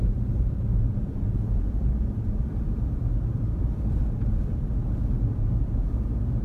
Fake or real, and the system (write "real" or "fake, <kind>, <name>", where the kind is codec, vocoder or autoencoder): fake, vocoder, Vocos